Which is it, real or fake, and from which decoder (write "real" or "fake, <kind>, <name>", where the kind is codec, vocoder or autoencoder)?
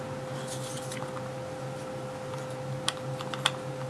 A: real